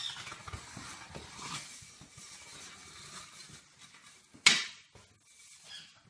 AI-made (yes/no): no